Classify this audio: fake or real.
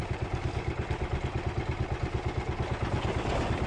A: real